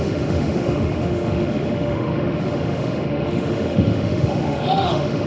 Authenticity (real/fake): fake